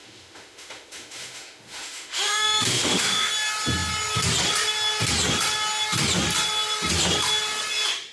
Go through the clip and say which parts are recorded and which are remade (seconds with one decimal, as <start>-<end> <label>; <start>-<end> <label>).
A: 0.0-3.3 remade; 3.3-8.1 recorded